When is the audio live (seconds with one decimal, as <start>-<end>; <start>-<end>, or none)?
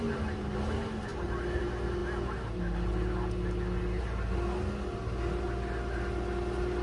0.0-6.8